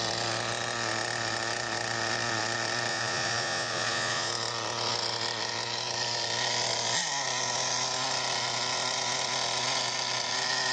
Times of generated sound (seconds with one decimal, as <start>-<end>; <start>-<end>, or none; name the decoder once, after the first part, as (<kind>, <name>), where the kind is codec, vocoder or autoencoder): 2.9-4.3 (vocoder, Vocos)

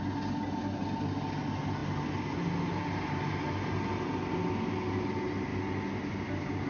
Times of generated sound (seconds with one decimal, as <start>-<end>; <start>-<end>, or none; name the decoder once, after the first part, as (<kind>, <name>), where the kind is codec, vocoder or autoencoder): none